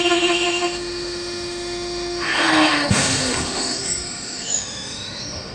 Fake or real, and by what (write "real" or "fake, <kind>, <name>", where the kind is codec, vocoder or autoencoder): fake, autoencoder, DAC-VAE